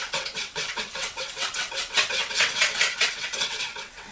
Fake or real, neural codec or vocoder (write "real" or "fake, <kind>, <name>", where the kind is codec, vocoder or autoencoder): fake, vocoder, WaveNeXt